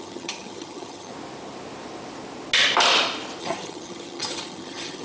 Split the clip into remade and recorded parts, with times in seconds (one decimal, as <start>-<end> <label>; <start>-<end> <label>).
0.0-1.1 remade; 1.1-3.4 recorded; 3.4-5.0 remade